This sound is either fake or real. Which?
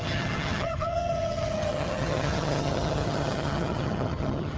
fake